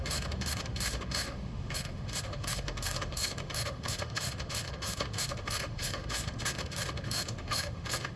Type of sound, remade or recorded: remade